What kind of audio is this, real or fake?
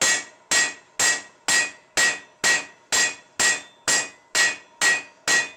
real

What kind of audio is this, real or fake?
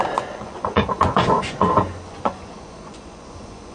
fake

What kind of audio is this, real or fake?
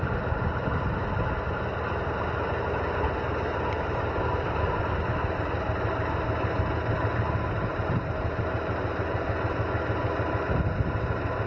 real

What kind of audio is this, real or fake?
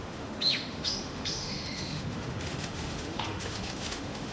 fake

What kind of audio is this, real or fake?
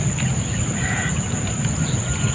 real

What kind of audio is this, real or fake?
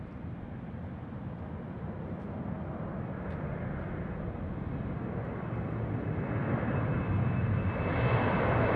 real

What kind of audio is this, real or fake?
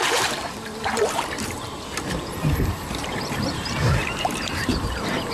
fake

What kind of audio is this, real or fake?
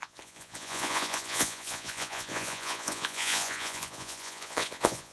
fake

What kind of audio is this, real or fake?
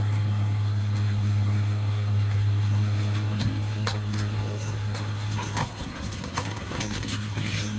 fake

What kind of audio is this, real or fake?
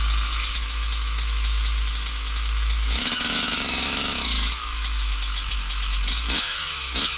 fake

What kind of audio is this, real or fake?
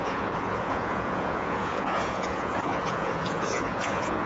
fake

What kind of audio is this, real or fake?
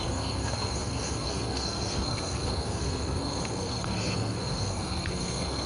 fake